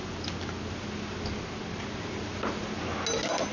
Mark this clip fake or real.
real